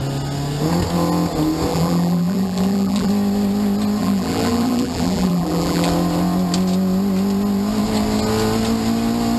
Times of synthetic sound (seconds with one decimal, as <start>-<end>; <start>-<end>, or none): 1.7-3.1; 4.0-5.9